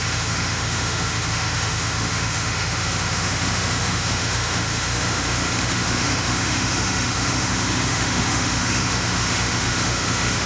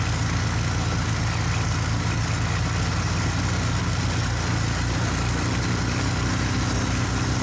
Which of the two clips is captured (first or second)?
second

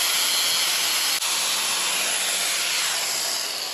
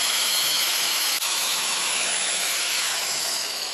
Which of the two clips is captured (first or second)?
first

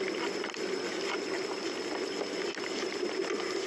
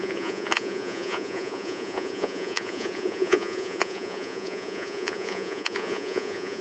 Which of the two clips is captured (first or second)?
first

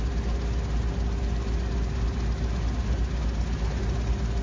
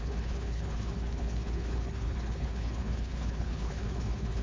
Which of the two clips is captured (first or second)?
first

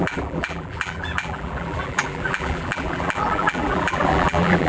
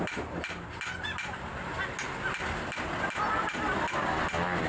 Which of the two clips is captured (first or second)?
second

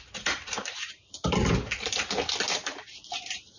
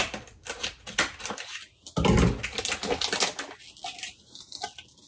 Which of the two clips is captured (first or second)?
second